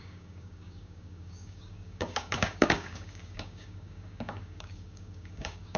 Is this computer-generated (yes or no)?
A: yes